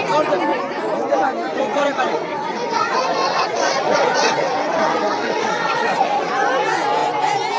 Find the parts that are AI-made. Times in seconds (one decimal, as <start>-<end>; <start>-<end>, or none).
1.7-6.3